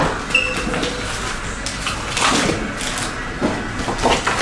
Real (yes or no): yes